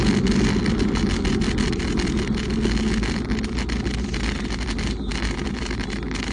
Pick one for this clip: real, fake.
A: real